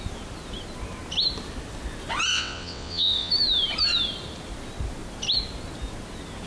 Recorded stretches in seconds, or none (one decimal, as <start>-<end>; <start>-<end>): 0.0-2.3; 3.3-6.5